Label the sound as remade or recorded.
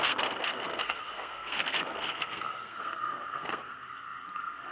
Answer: remade